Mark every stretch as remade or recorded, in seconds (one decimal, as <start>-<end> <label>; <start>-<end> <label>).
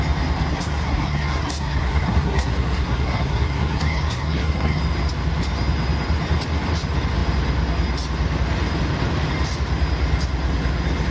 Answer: 0.0-0.5 recorded; 0.5-4.8 remade; 4.8-11.1 recorded